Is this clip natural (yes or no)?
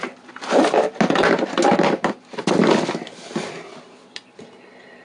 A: yes